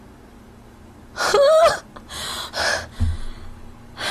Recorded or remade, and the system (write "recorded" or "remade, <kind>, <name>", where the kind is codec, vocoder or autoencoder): recorded